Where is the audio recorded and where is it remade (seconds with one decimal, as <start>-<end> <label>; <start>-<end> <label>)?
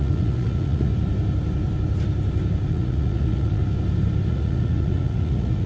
0.0-0.9 remade; 0.9-2.7 recorded; 2.7-3.6 remade; 3.6-4.3 recorded; 4.3-5.7 remade